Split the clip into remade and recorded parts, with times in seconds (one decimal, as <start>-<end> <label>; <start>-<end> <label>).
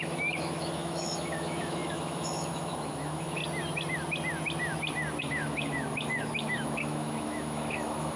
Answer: 0.0-3.4 remade; 3.4-5.2 recorded; 5.2-8.2 remade